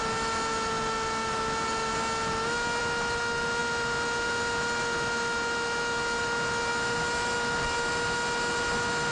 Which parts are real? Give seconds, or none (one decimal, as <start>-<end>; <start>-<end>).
0.0-9.1